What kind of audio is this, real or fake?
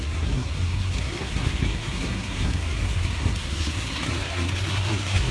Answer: fake